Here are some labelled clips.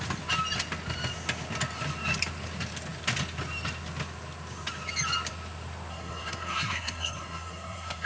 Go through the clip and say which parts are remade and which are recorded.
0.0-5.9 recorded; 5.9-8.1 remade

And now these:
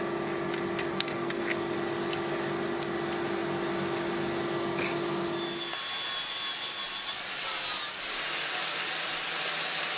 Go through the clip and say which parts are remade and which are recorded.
0.0-0.9 recorded; 0.9-1.4 remade; 1.4-10.0 recorded

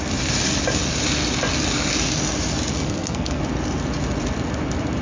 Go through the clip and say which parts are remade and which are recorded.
0.0-2.7 recorded; 2.7-3.4 remade; 3.4-5.0 recorded

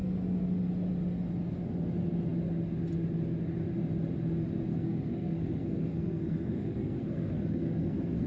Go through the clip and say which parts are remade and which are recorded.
0.0-4.7 recorded; 4.7-8.3 remade